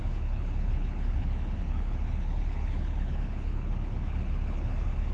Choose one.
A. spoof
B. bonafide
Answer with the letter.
A